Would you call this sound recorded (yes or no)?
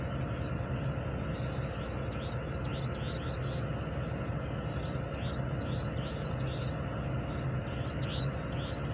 yes